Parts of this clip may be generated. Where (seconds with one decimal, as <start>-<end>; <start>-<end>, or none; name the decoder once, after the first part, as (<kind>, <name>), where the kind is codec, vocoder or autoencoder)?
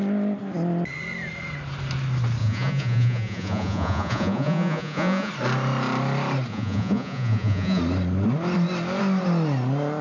2.4-5.3 (vocoder, Vocos); 6.5-7.8